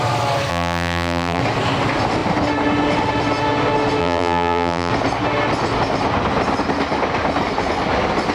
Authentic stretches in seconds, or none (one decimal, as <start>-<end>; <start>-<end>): 0.0-0.5; 1.4-4.0; 4.9-8.3